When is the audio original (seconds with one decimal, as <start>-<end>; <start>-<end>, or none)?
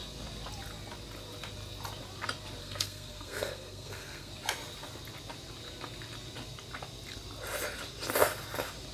0.0-2.6; 4.3-8.9